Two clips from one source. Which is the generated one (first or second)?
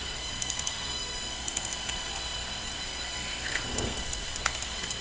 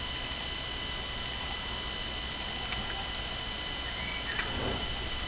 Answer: first